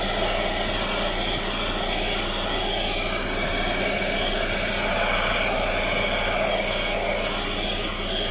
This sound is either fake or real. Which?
real